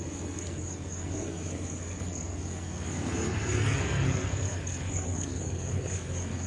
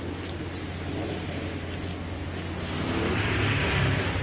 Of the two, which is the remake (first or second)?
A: first